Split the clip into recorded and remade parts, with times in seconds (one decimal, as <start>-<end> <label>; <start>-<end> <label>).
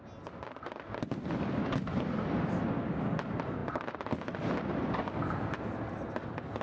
0.0-6.6 recorded